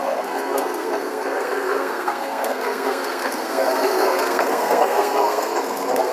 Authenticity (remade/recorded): remade